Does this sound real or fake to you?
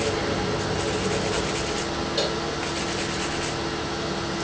real